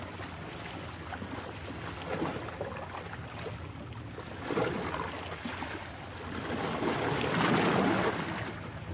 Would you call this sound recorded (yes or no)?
yes